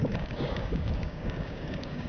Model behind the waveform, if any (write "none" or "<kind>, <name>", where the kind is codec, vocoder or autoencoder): codec, DAC